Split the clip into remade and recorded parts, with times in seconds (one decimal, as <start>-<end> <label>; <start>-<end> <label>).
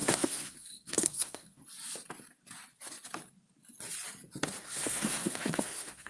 0.0-1.6 remade; 1.6-4.6 recorded; 4.6-6.1 remade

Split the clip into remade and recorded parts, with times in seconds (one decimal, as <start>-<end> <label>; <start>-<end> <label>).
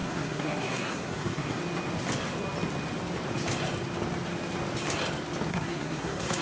0.0-1.6 remade; 1.6-5.5 recorded; 5.5-6.4 remade